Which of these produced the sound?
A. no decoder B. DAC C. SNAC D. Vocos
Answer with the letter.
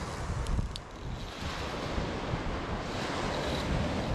A